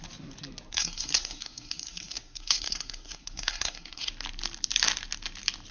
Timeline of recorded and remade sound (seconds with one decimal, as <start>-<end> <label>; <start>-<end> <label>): 0.0-0.7 recorded; 0.7-4.1 remade; 4.1-5.7 recorded